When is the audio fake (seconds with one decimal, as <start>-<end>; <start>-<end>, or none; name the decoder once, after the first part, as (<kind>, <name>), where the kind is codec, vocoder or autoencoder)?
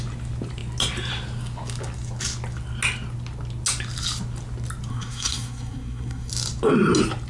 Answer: 4.9-6.3 (codec, SNAC)